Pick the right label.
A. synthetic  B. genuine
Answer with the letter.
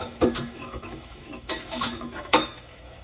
A